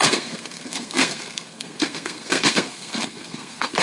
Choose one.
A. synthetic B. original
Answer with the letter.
A